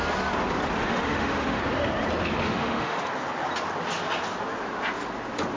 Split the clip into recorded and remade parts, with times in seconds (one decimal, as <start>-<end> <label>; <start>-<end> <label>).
0.0-0.8 recorded; 0.8-1.6 remade; 1.6-2.4 recorded; 2.4-3.0 remade; 3.0-5.6 recorded